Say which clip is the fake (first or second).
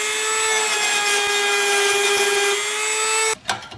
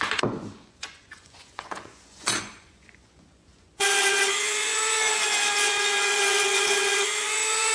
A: second